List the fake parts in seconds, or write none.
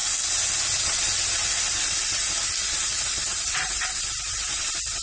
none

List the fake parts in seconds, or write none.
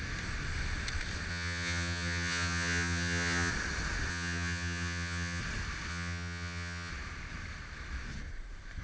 1.3-3.5 (vocoder, HiFi-GAN); 4.1-5.4; 5.9-6.9